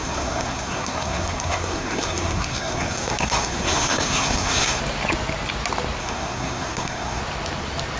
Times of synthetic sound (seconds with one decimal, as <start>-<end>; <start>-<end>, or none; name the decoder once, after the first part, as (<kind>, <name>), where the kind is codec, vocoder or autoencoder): 0.0-4.8 (codec, SNAC); 6.0-7.2